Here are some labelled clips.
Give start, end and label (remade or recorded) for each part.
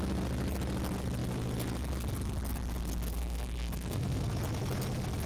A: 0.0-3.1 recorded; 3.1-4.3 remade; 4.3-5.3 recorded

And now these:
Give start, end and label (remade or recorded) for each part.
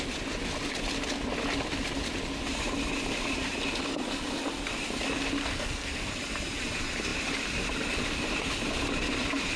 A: 0.0-5.4 recorded; 5.4-6.1 remade; 6.1-9.6 recorded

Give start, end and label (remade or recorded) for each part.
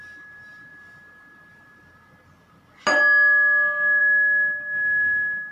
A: 0.0-5.5 recorded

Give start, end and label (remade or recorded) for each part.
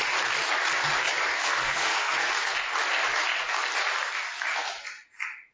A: 0.0-1.3 recorded; 1.3-2.3 remade; 2.3-5.5 recorded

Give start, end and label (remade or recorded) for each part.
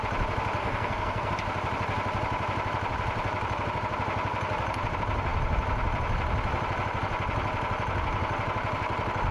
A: 0.0-0.6 recorded; 0.6-1.3 remade; 1.3-9.3 recorded